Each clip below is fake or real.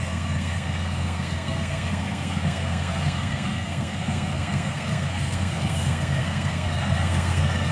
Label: fake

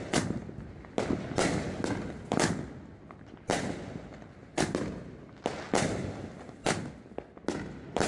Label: real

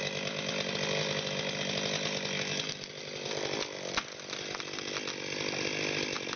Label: real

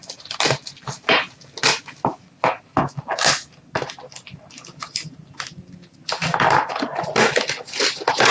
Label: real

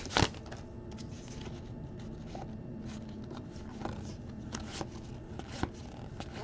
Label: real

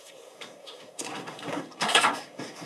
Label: fake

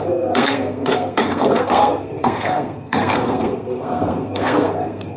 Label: fake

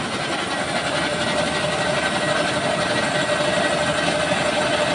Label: real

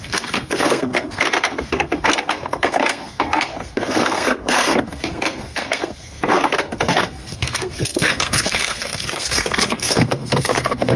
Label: fake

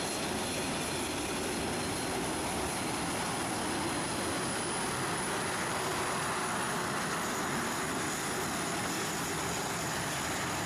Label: real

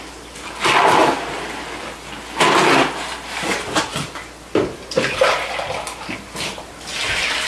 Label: real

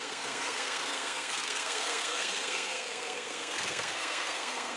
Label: fake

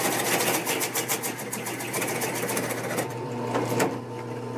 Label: real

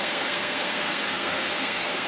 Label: fake